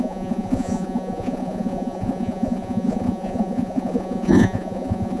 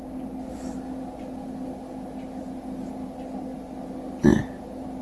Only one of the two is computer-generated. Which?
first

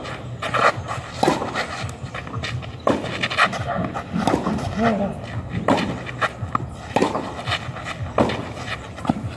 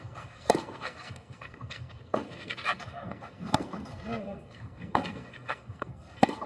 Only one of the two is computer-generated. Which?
second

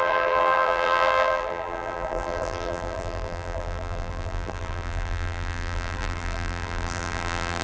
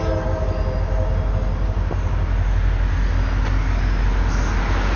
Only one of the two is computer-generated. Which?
first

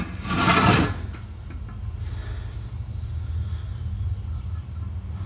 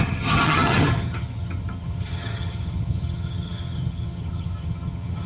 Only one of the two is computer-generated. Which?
second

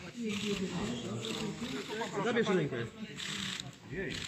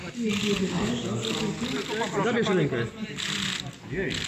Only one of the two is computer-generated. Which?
first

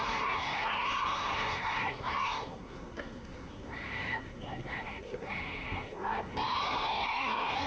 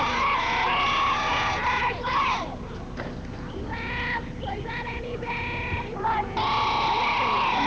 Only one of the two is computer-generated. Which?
first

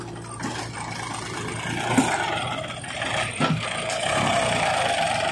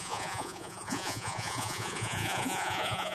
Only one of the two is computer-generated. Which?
second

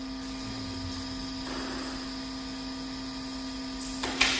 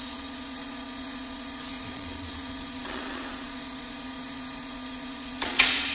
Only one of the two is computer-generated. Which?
second